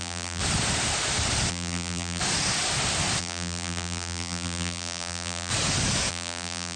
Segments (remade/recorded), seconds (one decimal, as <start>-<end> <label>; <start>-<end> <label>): 0.0-0.4 remade; 0.4-1.5 recorded; 1.5-2.2 remade; 2.2-3.2 recorded; 3.2-5.5 remade; 5.5-6.1 recorded; 6.1-6.8 remade